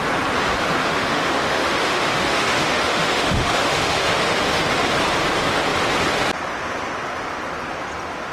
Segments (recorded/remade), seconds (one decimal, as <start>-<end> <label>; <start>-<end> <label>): 0.0-0.8 recorded; 0.8-4.6 remade; 4.6-8.3 recorded